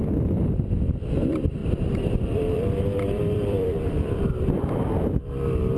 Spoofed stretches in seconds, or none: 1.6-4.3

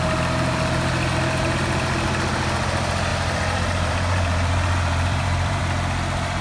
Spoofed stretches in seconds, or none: 3.1-5.6

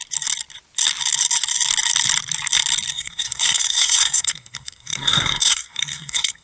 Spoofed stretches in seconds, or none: 2.9-6.4

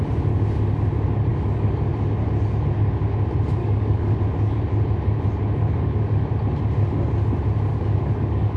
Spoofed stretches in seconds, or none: 1.3-1.9; 3.6-4.2; 5.6-6.3; 7.7-8.6

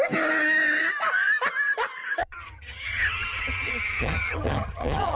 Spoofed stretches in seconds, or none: 2.2-5.2

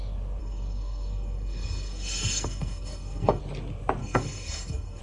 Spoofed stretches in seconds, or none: 0.4-3.4; 4.0-5.0

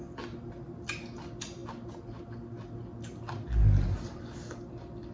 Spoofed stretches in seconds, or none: none